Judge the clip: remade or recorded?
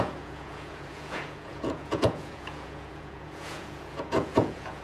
remade